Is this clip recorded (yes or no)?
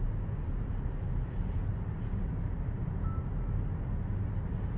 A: yes